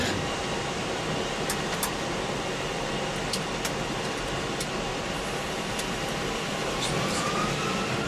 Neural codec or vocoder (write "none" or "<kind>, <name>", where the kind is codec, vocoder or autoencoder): none